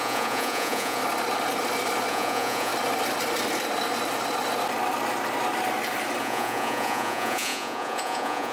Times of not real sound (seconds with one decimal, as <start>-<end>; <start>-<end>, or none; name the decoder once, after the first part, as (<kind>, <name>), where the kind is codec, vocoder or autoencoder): 0.0-1.0 (vocoder, Vocos); 2.1-2.7; 6.2-8.5